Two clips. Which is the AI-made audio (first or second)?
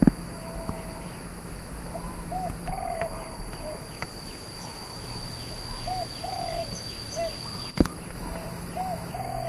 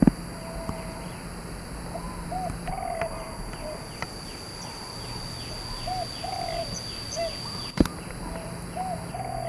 first